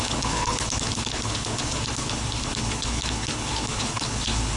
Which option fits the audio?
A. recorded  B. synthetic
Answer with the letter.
B